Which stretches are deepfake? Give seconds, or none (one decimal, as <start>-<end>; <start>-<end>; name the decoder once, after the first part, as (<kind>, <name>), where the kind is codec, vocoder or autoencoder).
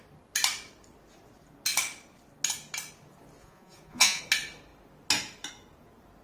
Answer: 3.4-4.2 (vocoder, Vocos)